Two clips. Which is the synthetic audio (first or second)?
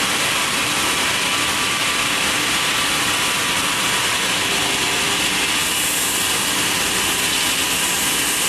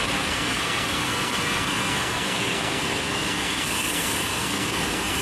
second